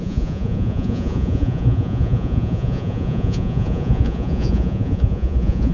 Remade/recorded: remade